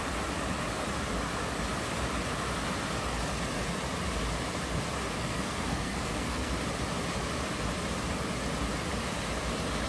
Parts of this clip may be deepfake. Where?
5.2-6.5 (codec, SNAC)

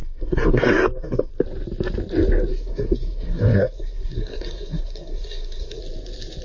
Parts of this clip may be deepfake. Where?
0.0-1.3 (codec, SNAC); 2.5-5.8

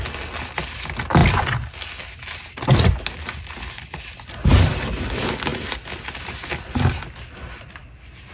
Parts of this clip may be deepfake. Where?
none

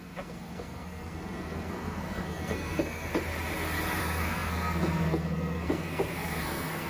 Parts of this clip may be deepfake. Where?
0.0-3.1 (codec, SNAC); 4.0-6.9

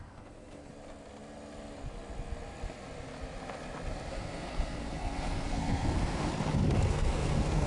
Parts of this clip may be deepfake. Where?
0.0-0.7 (codec, SNAC); 4.1-6.3; 6.9-7.7

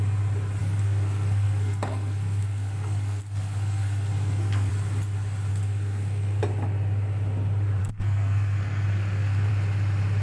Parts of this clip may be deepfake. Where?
0.6-4.7 (codec, SNAC); 5.5-6.4; 7.8-9.5

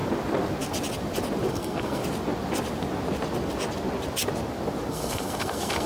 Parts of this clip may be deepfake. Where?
1.5-2.0 (codec, SNAC); 4.9-5.9